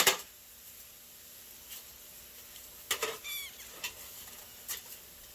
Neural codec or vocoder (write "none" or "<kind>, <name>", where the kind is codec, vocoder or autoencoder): none